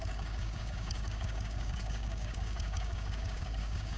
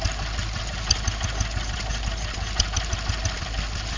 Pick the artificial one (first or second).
first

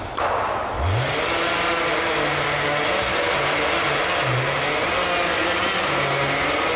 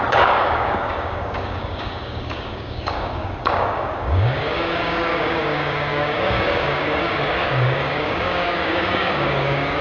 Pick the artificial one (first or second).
second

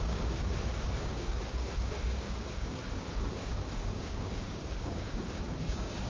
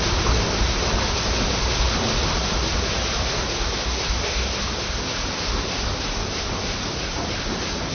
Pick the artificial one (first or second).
first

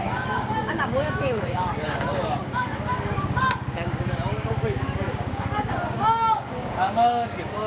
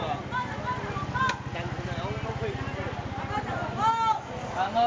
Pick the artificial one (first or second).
first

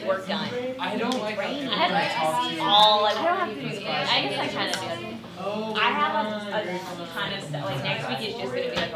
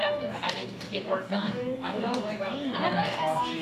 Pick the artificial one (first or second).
second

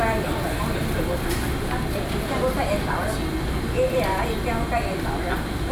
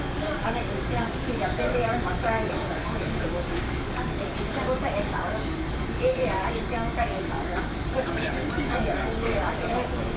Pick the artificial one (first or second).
second